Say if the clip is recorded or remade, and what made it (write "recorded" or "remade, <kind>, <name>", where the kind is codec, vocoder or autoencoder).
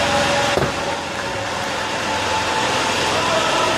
recorded